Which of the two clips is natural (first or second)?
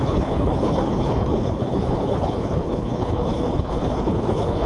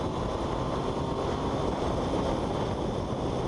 second